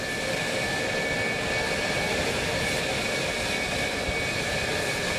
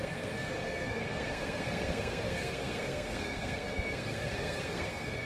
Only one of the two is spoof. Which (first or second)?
second